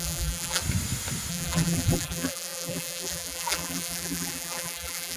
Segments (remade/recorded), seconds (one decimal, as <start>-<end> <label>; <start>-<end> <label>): 0.0-0.6 remade; 0.6-1.3 recorded; 1.3-5.2 remade